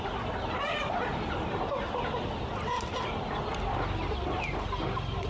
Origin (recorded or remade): recorded